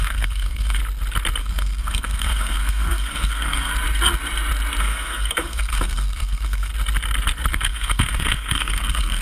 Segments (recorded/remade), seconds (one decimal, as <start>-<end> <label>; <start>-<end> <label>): 0.0-0.8 remade; 0.8-1.4 recorded; 1.4-3.7 remade; 3.7-4.8 recorded; 4.8-6.7 remade; 6.7-7.5 recorded; 7.5-9.2 remade